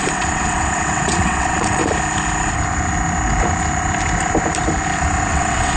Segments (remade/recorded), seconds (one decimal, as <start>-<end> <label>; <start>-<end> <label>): 0.0-1.8 remade; 1.8-5.3 recorded; 5.3-5.8 remade